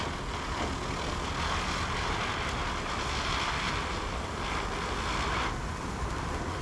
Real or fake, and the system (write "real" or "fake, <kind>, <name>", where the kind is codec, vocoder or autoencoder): real